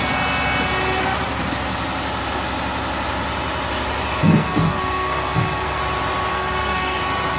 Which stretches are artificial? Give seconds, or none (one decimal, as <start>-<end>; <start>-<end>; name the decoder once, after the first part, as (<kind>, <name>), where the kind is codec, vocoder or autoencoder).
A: 4.2-5.8 (codec, SNAC); 6.3-7.0